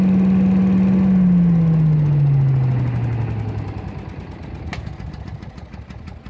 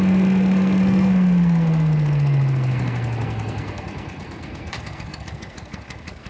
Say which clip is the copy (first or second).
second